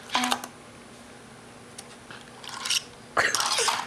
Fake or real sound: real